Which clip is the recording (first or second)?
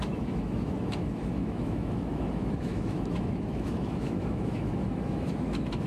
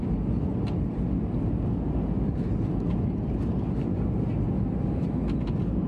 second